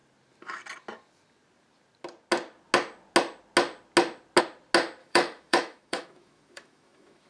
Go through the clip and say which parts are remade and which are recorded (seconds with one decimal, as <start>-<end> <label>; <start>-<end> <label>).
0.0-5.0 recorded; 5.0-7.3 remade